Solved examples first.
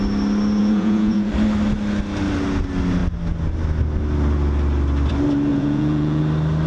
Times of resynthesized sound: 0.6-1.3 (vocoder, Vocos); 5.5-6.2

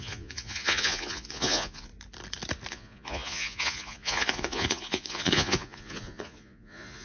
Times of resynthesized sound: 0.0-1.9 (vocoder, Vocos); 2.7-7.0

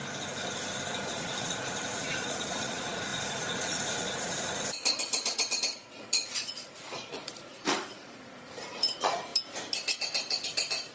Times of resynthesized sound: 1.1-9.3 (vocoder, Vocos)

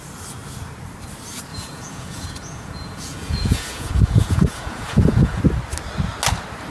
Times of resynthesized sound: 1.5-5.4 (vocoder, Vocos)

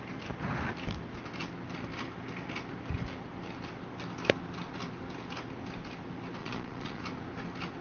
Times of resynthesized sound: 6.4-7.0 (vocoder, Vocos)

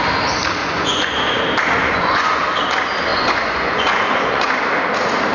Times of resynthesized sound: 0.6-1.4 (vocoder, Vocos); 1.8-2.4; 3.1-4.5

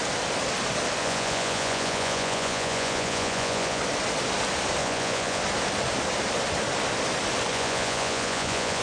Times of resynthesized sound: 1.0-3.8 (vocoder, Vocos); 4.8-5.4; 7.5-8.8